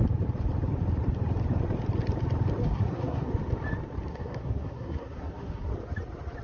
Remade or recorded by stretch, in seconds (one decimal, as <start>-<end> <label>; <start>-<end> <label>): 0.0-2.6 recorded; 2.6-3.3 remade; 3.3-4.1 recorded; 4.1-5.7 remade; 5.7-6.4 recorded